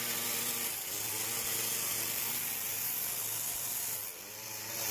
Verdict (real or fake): real